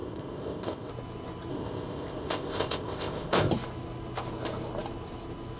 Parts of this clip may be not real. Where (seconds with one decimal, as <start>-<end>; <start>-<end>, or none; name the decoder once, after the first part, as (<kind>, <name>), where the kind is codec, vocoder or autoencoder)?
0.0-0.9 (codec, ZipCodec); 1.5-3.5